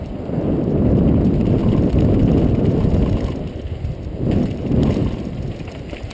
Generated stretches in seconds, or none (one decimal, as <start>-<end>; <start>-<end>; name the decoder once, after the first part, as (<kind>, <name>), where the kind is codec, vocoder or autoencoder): 0.0-1.6 (vocoder, BigVGAN v2); 3.1-6.1